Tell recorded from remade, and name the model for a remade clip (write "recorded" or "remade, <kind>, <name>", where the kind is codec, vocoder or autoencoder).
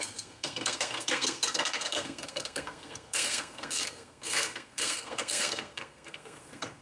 remade, codec, SNAC